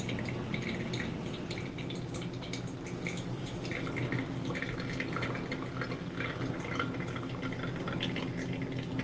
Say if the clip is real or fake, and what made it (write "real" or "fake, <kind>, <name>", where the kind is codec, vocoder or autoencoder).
real